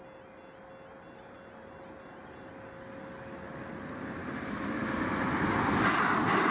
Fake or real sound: real